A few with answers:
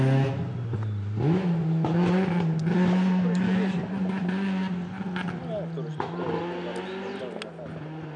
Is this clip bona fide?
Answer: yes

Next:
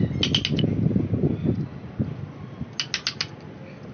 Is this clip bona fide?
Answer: yes